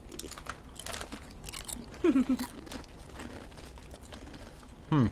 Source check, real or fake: real